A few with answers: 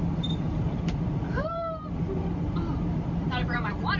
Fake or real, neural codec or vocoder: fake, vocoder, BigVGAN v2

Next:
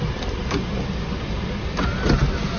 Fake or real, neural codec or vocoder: real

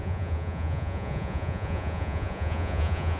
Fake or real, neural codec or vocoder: fake, vocoder, Vocos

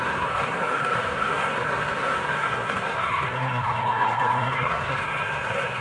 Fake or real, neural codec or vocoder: fake, codec, SNAC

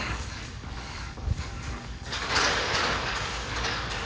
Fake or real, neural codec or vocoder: fake, codec, DAC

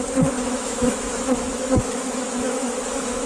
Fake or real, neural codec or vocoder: fake, autoencoder, DAC-VAE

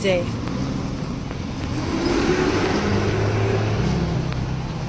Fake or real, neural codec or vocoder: real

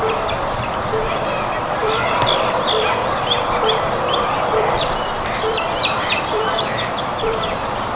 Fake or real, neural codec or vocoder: fake, vocoder, BigVGAN v2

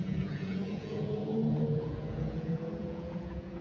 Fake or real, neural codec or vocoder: fake, vocoder, Vocos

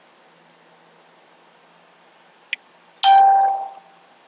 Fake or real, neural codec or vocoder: real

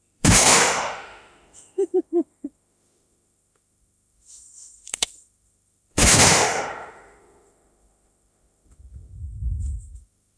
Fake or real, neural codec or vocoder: fake, autoencoder, DAC-VAE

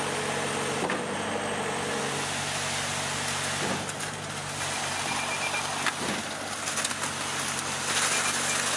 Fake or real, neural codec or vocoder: real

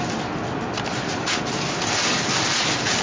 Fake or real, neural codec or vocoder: real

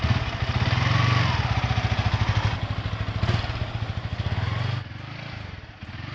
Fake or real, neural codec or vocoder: real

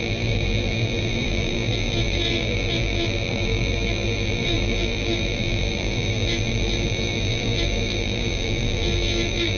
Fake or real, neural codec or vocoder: fake, vocoder, BigVGAN v2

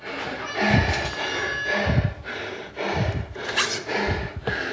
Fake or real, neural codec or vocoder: real